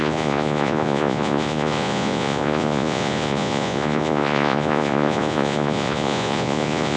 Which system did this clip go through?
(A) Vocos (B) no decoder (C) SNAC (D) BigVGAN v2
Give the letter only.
A